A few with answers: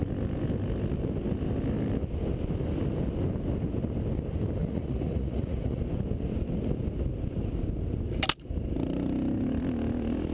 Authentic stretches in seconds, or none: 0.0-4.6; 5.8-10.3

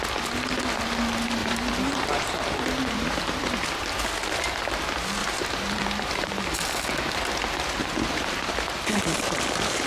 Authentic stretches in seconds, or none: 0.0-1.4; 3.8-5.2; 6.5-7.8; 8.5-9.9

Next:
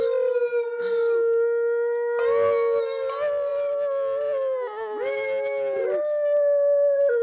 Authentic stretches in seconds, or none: 0.0-7.2